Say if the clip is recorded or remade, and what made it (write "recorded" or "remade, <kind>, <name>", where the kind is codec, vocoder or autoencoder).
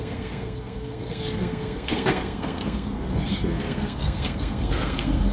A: remade, codec, SNAC